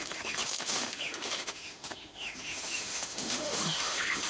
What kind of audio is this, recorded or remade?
remade